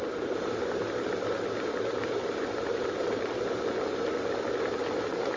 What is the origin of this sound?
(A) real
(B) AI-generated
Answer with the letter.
A